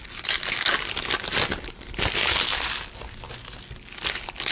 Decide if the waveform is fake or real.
real